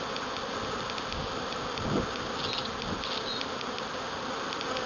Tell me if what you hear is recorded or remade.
recorded